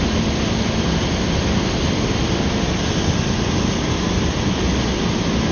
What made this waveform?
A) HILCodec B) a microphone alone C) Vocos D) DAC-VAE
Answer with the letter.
B